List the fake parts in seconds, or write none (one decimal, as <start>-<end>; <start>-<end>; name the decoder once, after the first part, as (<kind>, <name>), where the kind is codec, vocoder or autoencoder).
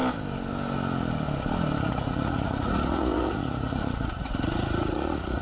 1.8-5.4 (vocoder, Vocos)